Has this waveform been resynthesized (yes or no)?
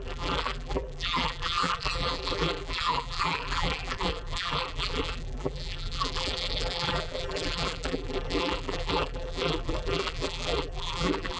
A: yes